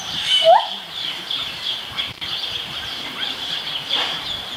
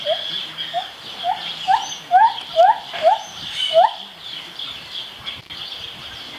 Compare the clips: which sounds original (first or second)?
second